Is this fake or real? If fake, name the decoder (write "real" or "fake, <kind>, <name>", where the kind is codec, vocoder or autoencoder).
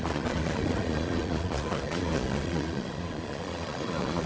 fake, vocoder, Vocos